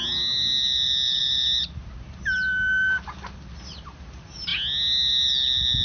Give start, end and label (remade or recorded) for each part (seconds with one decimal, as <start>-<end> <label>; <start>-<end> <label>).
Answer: 0.0-5.8 recorded